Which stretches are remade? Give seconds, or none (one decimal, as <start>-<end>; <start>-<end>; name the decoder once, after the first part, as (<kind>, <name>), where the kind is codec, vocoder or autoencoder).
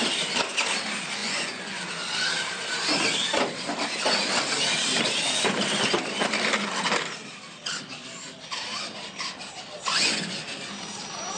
1.2-1.8 (vocoder, Vocos); 9.9-10.4